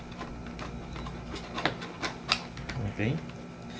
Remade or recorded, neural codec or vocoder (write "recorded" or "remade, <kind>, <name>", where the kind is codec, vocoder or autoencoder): recorded